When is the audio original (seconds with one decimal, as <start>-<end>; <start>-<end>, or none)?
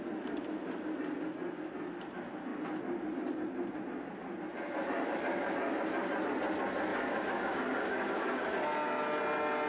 0.0-6.9; 8.5-9.7